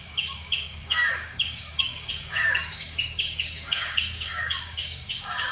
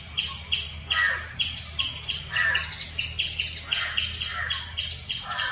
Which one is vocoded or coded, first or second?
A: first